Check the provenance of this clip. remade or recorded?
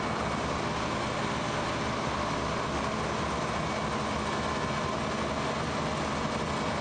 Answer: recorded